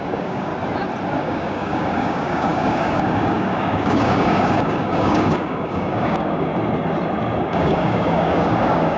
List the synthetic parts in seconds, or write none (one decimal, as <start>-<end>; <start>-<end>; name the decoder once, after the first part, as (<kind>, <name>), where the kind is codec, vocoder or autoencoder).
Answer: 0.0-0.5 (codec, DAC); 1.2-6.5; 7.4-9.0